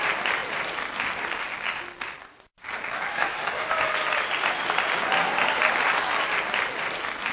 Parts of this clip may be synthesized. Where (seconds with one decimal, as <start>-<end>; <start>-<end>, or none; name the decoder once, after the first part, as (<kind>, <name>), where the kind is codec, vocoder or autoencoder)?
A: 3.1-3.9 (autoencoder, DAC-VAE)

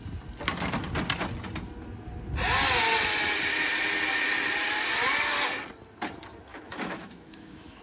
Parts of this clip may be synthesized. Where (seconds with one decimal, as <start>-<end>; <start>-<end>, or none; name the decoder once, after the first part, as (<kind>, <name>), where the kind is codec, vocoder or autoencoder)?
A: 6.5-7.8 (autoencoder, DAC-VAE)

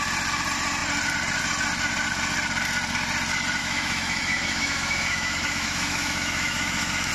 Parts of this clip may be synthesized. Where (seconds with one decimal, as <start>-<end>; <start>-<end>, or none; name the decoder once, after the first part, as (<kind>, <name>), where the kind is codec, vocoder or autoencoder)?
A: 3.6-7.1 (autoencoder, DAC-VAE)

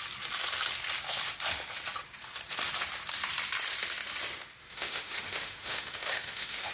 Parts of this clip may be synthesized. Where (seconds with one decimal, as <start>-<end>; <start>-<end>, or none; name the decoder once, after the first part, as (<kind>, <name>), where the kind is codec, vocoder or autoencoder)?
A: 4.6-6.7 (autoencoder, DAC-VAE)

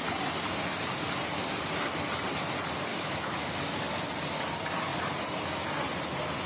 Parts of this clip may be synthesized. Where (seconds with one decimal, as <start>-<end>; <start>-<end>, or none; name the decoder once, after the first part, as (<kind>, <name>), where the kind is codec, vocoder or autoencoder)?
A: 2.9-3.5 (autoencoder, DAC-VAE)